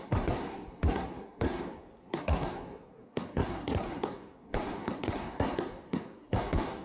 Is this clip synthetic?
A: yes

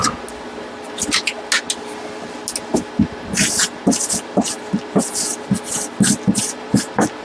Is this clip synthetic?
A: no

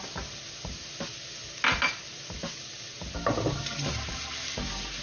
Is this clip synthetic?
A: no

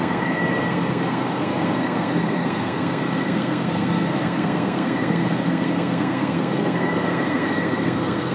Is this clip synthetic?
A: yes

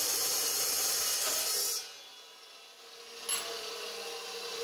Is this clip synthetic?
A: no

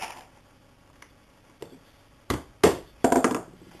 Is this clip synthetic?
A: no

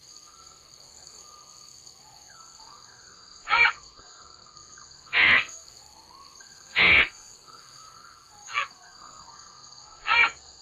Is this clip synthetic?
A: yes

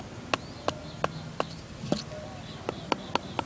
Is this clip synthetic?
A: no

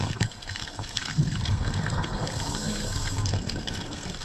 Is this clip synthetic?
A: yes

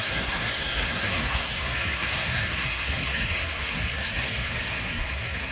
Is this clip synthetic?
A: yes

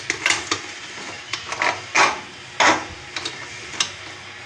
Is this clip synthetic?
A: no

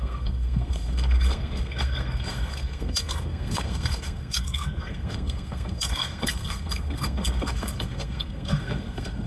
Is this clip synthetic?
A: yes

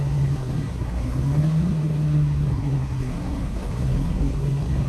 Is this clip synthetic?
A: yes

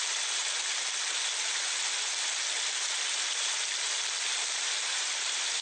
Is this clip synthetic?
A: no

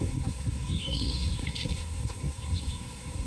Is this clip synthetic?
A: yes